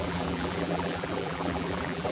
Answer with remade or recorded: remade